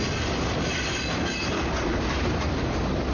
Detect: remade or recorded recorded